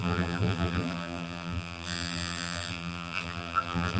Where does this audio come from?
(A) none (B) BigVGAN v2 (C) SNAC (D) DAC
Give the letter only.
B